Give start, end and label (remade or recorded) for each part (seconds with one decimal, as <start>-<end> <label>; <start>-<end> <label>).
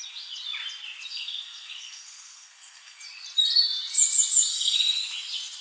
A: 0.0-1.1 recorded; 1.1-3.0 remade; 3.0-4.5 recorded; 4.5-5.0 remade; 5.0-5.6 recorded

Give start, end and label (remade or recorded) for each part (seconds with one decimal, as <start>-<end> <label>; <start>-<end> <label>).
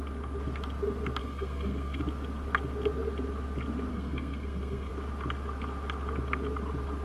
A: 0.0-1.2 recorded; 1.2-2.0 remade; 2.0-3.9 recorded; 3.9-4.9 remade; 4.9-7.0 recorded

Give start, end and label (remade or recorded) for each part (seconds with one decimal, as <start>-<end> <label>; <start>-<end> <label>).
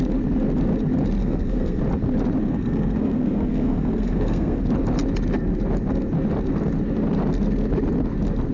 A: 0.0-1.2 recorded; 1.2-1.8 remade; 1.8-2.4 recorded; 2.4-4.6 remade; 4.6-8.5 recorded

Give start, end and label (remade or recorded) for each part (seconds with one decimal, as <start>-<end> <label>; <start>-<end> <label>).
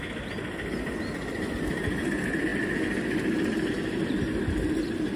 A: 0.0-5.2 recorded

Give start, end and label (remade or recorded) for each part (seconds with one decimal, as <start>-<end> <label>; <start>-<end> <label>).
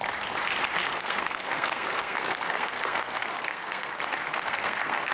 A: 0.0-0.8 recorded; 0.8-3.9 remade; 3.9-4.3 recorded; 4.3-5.1 remade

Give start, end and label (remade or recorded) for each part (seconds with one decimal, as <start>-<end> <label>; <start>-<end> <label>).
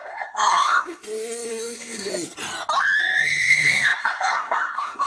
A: 0.0-1.0 remade; 1.0-1.5 recorded; 1.5-2.1 remade; 2.1-3.0 recorded; 3.0-5.1 remade